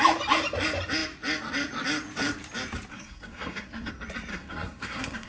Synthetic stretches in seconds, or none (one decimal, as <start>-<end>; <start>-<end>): 2.9-3.9; 4.3-5.3